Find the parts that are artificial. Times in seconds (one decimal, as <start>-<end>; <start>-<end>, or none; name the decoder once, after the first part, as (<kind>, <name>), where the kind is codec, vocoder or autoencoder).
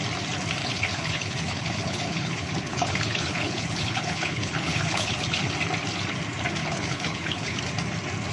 0.6-5.5 (codec, HILCodec); 6.6-7.6